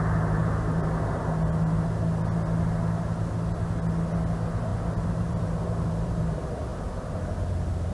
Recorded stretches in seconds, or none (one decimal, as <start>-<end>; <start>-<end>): 0.0-0.4; 1.2-4.7; 6.2-7.9